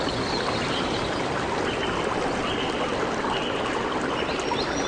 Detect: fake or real real